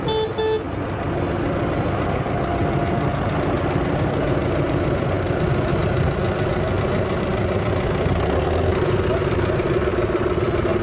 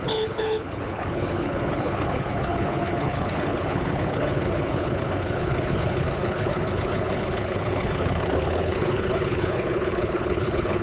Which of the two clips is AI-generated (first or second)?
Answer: second